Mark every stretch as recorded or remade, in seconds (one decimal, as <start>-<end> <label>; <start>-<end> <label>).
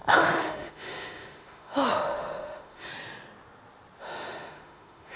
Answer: 0.0-2.9 remade; 2.9-4.0 recorded; 4.0-5.2 remade